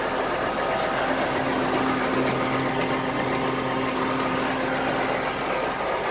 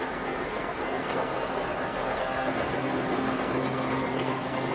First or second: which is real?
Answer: first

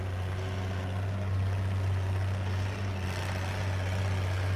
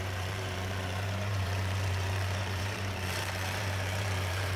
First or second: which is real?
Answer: first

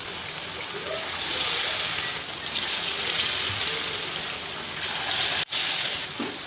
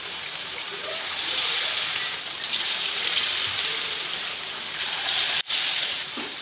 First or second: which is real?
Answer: first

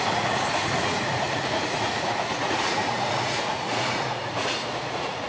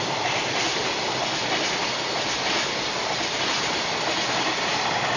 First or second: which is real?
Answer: second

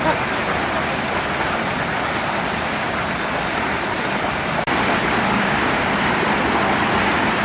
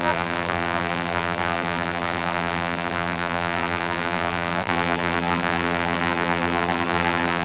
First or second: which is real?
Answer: first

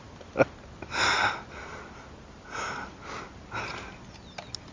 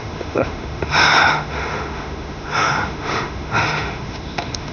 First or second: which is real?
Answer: first